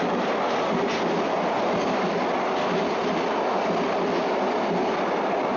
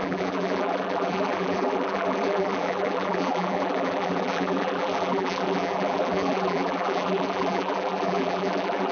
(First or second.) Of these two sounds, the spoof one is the second